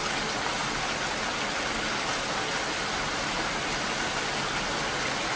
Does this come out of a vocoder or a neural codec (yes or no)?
no